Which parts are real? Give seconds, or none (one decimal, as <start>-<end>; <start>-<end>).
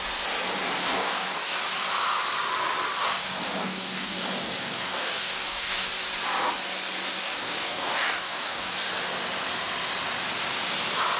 0.0-0.8; 1.6-3.6; 5.9-7.1; 8.7-11.2